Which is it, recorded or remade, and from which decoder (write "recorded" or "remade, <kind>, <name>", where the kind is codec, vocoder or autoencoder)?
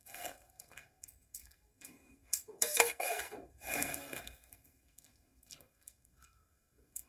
remade, codec, SNAC